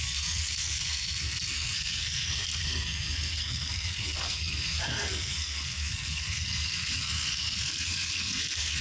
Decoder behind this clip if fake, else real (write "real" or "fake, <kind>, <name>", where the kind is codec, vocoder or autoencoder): fake, codec, SNAC